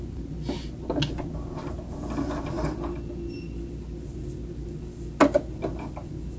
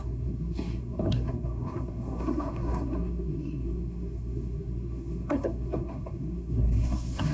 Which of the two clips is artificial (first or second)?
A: second